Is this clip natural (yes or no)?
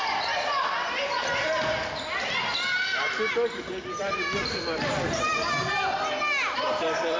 yes